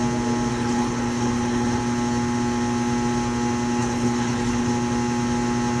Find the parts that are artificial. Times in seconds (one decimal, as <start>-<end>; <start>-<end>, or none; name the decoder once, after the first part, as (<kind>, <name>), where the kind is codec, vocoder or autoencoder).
0.5-1.8 (codec, HILCodec); 3.8-4.7